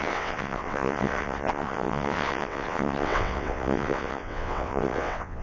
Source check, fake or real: fake